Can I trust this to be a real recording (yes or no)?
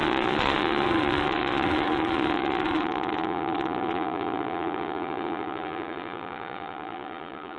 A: no